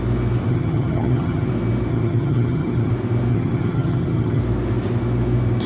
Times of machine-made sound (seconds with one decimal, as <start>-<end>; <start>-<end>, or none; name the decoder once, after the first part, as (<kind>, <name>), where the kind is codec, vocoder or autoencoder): 0.5-1.5 (vocoder, HiFi-GAN); 1.9-2.9; 3.3-4.4